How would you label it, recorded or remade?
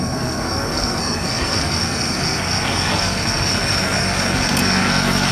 remade